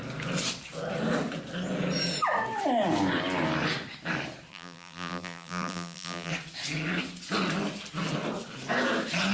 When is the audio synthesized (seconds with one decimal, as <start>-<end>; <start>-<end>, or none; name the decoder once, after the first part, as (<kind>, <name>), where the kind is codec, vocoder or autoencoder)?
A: 4.5-6.3 (vocoder, BigVGAN v2)